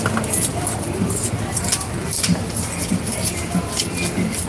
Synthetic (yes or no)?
no